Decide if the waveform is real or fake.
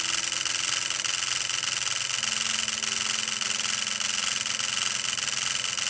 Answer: real